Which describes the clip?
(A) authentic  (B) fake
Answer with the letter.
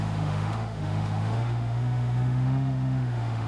B